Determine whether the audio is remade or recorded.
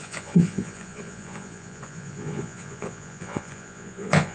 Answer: remade